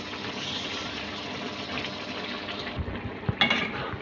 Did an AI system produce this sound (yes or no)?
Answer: no